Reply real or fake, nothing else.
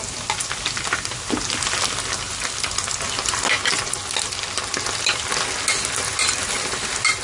real